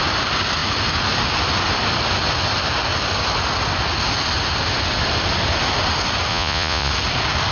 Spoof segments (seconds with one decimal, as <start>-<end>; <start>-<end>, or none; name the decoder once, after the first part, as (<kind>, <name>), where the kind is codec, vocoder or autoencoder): 6.3-6.9 (vocoder, Vocos)

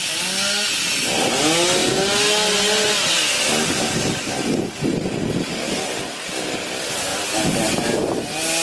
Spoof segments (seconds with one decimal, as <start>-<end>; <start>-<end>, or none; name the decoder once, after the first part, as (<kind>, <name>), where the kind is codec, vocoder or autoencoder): none

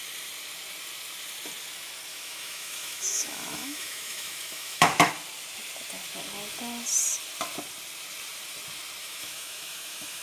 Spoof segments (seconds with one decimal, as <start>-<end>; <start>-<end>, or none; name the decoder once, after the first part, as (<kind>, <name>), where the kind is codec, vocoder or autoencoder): 2.1-5.1 (autoencoder, DAC-VAE); 9.0-10.2